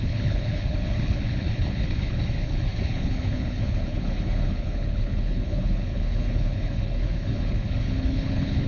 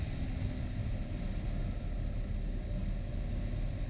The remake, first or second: first